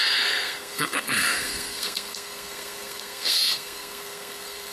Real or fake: fake